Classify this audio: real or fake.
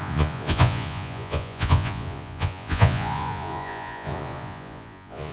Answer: fake